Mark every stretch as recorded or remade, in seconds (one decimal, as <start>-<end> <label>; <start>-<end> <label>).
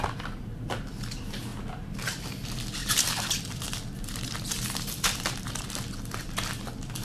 0.0-2.8 recorded; 2.8-5.5 remade; 5.5-7.0 recorded